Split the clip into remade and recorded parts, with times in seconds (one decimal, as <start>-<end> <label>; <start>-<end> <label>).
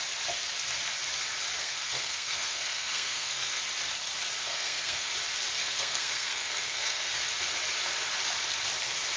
0.0-1.6 recorded; 1.6-3.6 remade; 3.6-4.4 recorded; 4.4-5.1 remade; 5.1-5.6 recorded; 5.6-7.1 remade; 7.1-9.2 recorded